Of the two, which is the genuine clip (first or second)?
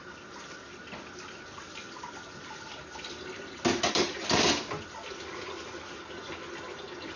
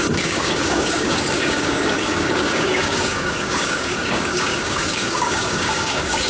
first